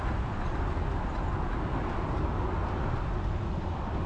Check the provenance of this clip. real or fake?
real